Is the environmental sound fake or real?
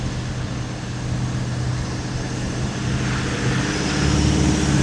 real